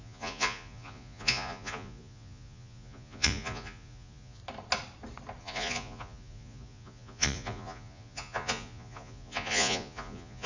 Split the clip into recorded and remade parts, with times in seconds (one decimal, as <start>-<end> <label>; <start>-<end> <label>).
0.0-4.4 remade; 4.4-5.4 recorded; 5.4-10.5 remade